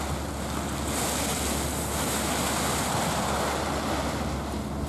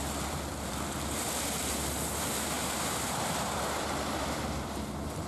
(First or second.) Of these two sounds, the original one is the first